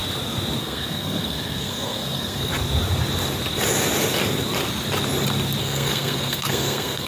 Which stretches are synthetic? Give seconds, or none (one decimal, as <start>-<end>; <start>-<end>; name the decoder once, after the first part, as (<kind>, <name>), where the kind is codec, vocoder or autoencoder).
0.6-2.5 (codec, SNAC); 5.6-7.1